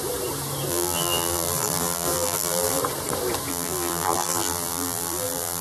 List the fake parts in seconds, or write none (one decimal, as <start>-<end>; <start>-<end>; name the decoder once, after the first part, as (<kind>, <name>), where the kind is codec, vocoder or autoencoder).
0.7-2.8 (vocoder, BigVGAN v2); 3.5-5.6